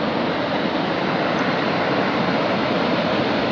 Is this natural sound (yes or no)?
yes